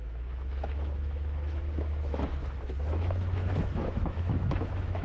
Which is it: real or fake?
fake